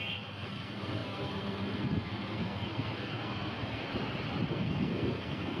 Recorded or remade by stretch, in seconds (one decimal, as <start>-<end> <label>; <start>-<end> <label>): 0.0-3.9 remade; 3.9-4.5 recorded; 4.5-5.6 remade